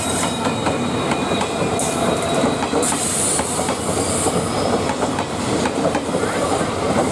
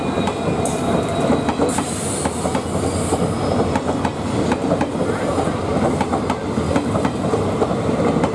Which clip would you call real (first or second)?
second